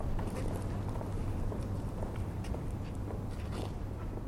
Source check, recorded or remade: remade